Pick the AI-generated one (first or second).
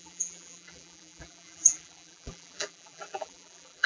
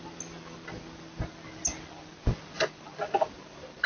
first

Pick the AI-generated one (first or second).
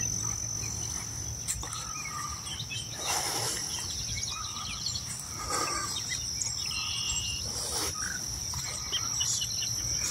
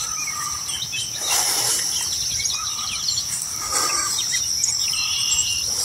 second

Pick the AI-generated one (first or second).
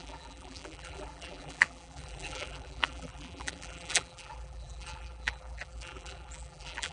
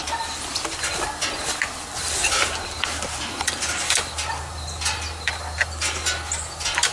first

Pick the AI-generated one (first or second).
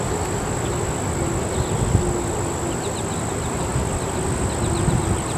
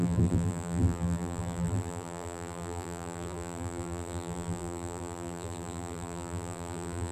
second